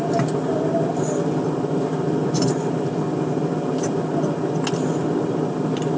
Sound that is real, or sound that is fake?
real